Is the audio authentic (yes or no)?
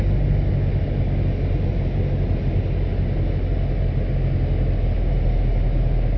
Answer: yes